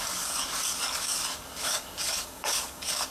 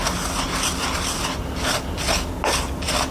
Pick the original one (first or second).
second